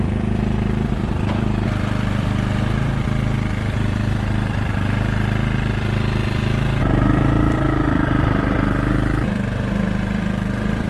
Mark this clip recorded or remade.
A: remade